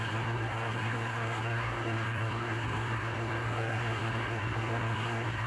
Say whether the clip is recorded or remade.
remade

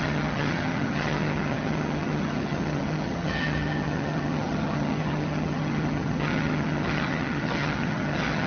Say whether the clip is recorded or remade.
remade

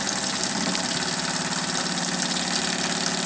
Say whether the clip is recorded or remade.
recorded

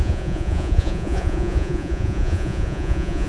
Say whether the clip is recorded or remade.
remade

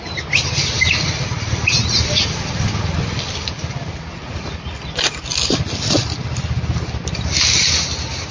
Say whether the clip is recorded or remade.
recorded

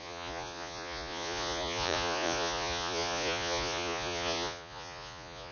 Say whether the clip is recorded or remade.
remade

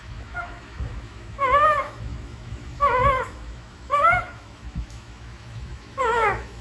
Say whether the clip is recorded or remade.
remade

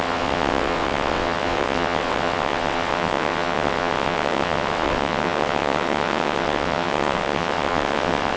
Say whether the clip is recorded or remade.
remade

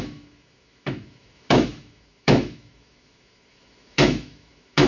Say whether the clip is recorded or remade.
remade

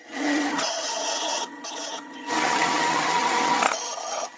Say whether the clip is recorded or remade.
remade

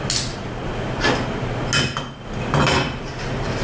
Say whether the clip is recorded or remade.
recorded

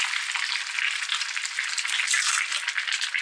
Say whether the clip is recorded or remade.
recorded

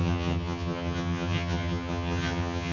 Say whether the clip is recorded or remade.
remade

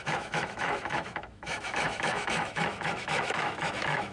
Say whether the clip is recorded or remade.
remade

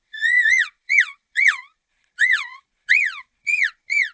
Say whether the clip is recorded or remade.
remade